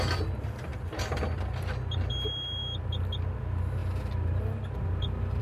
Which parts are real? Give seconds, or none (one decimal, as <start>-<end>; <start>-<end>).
0.0-5.4